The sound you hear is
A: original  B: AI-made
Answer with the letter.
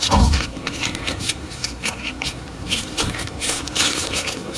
B